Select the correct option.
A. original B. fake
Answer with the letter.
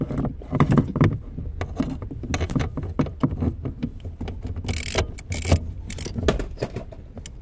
A